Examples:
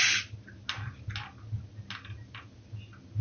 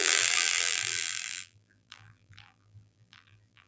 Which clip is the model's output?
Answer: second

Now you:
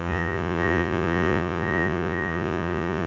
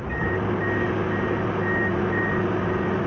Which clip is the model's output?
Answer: first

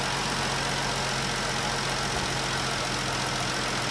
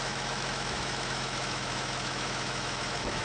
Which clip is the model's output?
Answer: second